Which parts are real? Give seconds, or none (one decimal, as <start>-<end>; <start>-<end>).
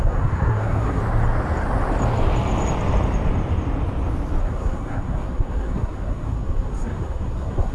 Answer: 1.0-4.4